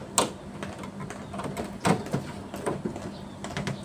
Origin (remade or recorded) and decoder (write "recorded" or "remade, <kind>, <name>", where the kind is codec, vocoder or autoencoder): recorded